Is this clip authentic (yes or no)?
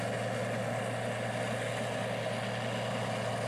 yes